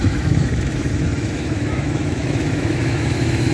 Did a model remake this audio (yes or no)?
yes